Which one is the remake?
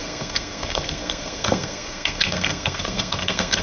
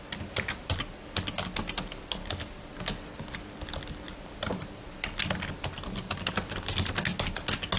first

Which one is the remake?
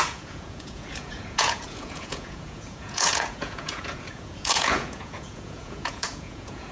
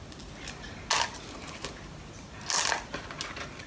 first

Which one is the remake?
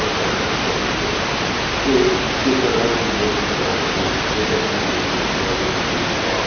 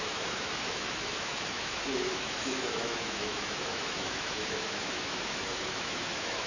second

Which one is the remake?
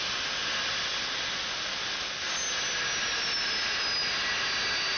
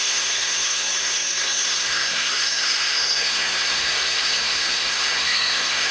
second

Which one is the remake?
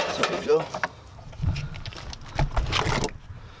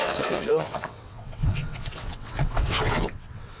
second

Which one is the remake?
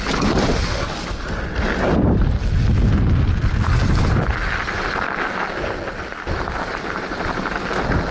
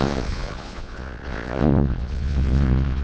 second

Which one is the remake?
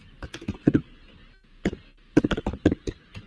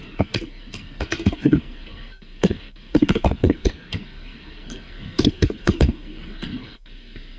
second